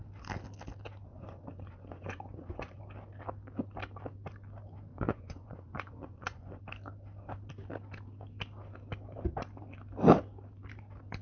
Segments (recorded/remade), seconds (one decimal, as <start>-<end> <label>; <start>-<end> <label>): 0.0-1.1 recorded; 1.1-2.8 remade; 2.8-4.9 recorded; 4.9-6.6 remade; 6.6-11.2 recorded